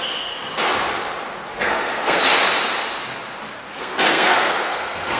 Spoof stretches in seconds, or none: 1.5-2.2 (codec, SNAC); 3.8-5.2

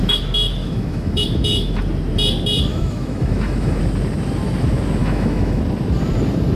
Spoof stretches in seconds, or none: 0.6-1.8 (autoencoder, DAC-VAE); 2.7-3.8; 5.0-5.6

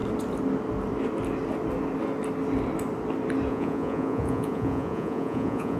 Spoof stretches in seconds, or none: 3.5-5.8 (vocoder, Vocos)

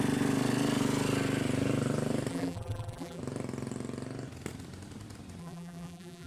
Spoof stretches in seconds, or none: 2.3-3.2 (vocoder, BigVGAN v2); 5.4-6.3

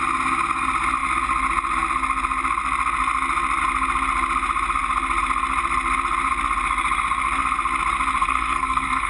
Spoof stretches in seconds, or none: 8.2-9.1 (codec, SNAC)